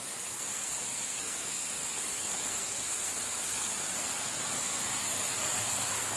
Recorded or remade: remade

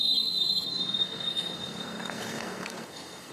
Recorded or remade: remade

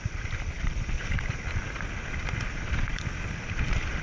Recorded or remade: recorded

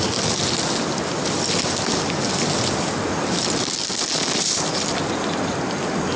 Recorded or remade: recorded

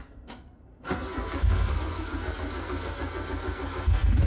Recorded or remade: remade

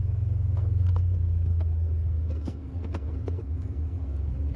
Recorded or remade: remade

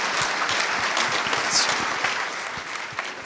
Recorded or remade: recorded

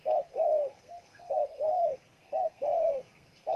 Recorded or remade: remade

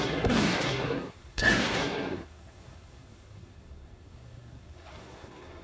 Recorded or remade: remade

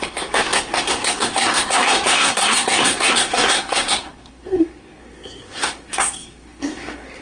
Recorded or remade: remade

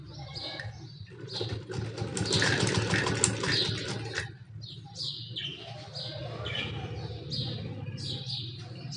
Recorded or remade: recorded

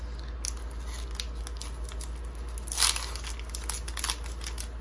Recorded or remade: recorded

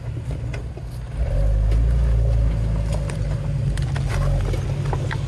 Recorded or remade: recorded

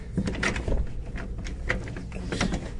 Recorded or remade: recorded